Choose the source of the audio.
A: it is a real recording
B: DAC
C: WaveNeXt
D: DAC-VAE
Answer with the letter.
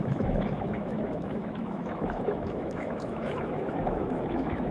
D